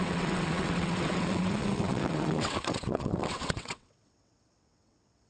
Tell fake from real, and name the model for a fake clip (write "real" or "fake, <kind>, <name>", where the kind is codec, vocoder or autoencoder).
fake, vocoder, WaveNeXt